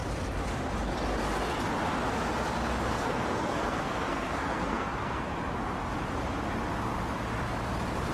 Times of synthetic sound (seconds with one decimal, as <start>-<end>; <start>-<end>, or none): 2.9-5.3